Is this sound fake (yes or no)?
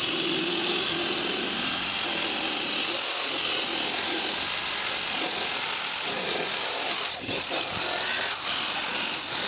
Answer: no